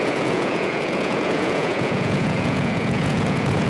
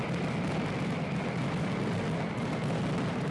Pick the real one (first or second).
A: second